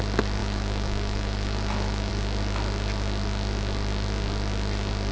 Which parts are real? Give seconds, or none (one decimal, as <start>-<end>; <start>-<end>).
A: 0.0-0.4; 2.1-5.1